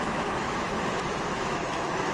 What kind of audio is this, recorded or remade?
remade